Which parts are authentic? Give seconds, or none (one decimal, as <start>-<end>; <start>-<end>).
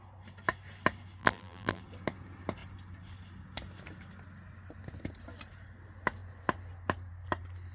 0.0-1.2; 1.8-7.7